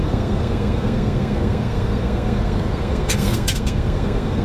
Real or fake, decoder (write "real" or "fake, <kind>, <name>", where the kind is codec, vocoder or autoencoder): fake, codec, SNAC